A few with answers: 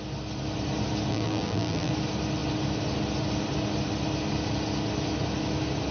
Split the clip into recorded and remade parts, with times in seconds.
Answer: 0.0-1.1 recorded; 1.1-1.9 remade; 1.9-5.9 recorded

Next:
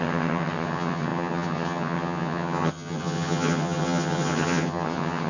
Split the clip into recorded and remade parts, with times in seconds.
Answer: 0.0-5.3 remade

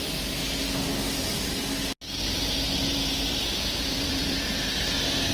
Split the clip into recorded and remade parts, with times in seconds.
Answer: 0.0-2.9 recorded; 2.9-4.5 remade; 4.5-5.3 recorded

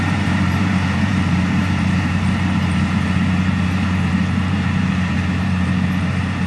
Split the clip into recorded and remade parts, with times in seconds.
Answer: 0.0-6.5 remade

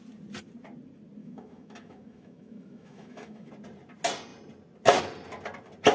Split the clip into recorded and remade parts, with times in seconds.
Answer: 0.0-1.2 recorded; 1.2-3.5 remade; 3.5-5.9 recorded